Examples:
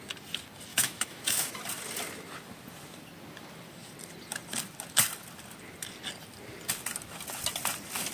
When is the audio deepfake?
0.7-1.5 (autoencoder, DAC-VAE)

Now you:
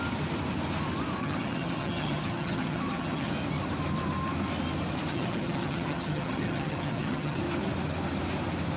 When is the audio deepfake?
1.2-3.3 (vocoder, HiFi-GAN); 5.1-7.4

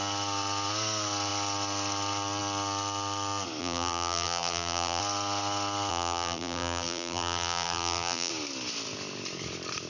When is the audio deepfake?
3.6-5.0 (vocoder, BigVGAN v2); 5.9-8.3

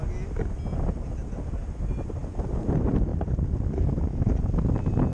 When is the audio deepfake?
none

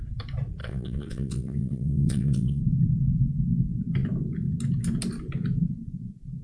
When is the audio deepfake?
0.6-2.6 (vocoder, WaveNeXt)

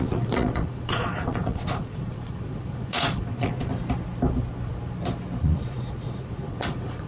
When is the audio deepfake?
0.0-3.7 (vocoder, Vocos); 5.4-7.1